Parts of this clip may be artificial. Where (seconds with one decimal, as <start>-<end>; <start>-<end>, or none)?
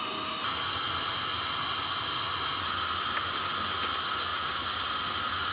4.3-5.1